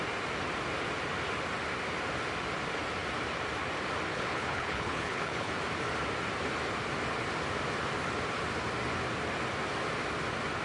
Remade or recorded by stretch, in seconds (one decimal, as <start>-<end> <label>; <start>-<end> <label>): 0.0-4.1 recorded; 4.1-5.5 remade; 5.5-10.6 recorded